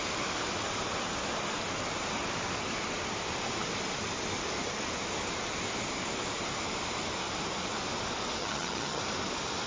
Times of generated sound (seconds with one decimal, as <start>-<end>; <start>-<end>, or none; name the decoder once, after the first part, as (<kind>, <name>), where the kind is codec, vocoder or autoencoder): 8.4-9.0 (vocoder, HiFi-GAN)